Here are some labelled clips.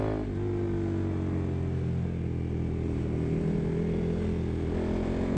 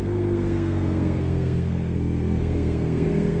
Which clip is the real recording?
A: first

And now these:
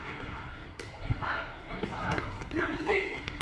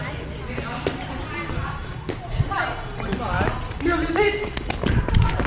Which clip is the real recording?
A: second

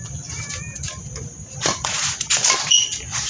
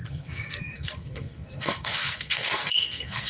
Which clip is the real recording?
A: first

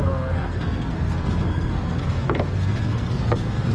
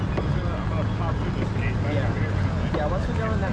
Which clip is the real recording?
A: second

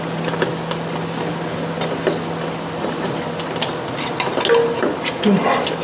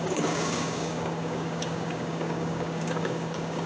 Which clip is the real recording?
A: first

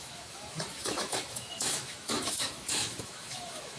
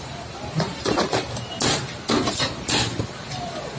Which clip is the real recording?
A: second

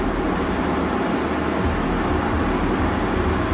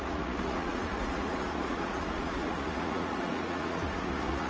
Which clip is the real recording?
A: first